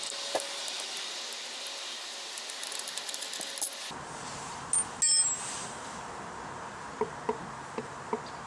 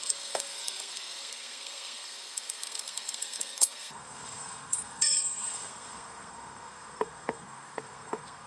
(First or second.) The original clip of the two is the first